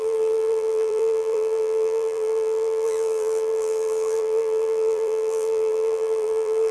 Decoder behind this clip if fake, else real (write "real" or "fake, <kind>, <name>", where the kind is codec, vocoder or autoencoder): fake, vocoder, BigVGAN v2